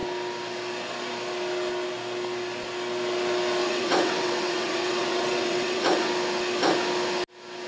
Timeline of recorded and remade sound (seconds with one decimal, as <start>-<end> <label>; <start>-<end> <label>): 0.0-3.6 recorded; 3.6-6.1 remade; 6.1-7.7 recorded